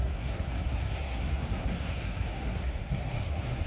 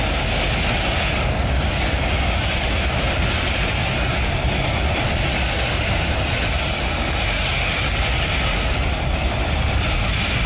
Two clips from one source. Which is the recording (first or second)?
second